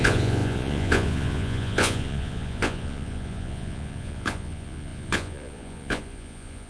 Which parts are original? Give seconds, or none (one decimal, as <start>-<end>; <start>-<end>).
none